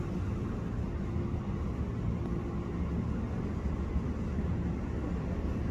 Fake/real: real